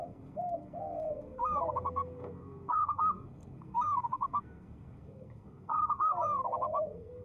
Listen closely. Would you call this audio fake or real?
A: fake